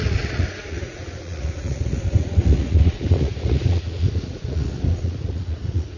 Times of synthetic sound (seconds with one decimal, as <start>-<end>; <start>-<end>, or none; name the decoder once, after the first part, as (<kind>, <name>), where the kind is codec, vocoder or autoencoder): 0.0-6.0 (vocoder, Vocos)